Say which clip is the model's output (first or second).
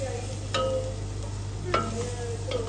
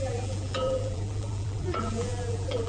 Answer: second